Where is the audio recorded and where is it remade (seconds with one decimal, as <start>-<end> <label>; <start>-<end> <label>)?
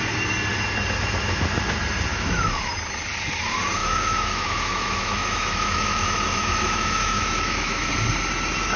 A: 0.0-2.1 recorded; 2.1-2.7 remade; 2.7-3.8 recorded; 3.8-7.9 remade; 7.9-8.8 recorded